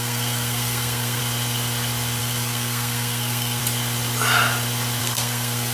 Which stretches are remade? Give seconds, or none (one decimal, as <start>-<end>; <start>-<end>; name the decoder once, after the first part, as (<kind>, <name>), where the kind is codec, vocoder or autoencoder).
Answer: 0.0-1.2 (codec, SNAC); 2.2-3.6; 5.0-5.7